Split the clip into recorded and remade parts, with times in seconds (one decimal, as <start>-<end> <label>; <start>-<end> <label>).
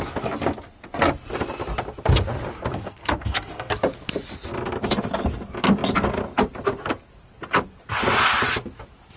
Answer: 0.0-2.7 recorded; 2.7-3.7 remade; 3.7-9.2 recorded